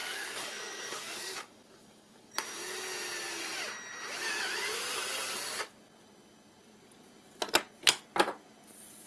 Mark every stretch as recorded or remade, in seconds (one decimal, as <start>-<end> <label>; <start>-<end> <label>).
0.0-2.3 remade; 2.3-9.1 recorded